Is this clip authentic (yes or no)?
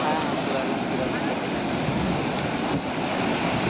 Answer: yes